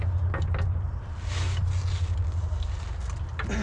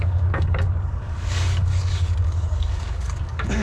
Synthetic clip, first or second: second